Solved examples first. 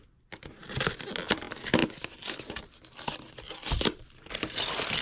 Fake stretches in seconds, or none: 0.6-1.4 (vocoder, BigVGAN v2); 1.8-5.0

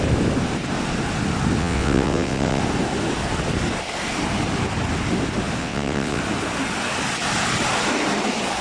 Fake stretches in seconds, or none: 1.6-2.6 (vocoder, WaveNeXt); 5.6-6.2

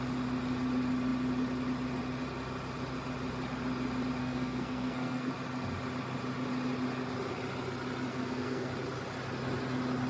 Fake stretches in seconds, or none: 4.2-5.3 (codec, SNAC); 8.1-8.7

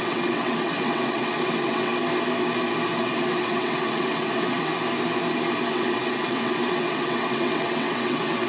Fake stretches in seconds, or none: 0.0-1.9 (vocoder, WaveNeXt); 3.0-4.7; 5.7-8.5

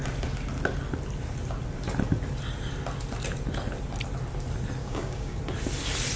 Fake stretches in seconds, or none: 4.8-5.4 (codec, DAC)

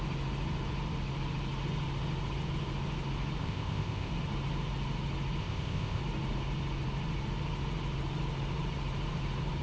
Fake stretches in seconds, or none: 3.4-4.1 (codec, ZipCodec); 5.4-6.0

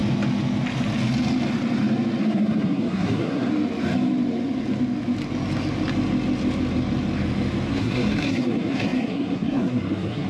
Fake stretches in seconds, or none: 2.2-3.5 (codec, SNAC); 7.7-10.3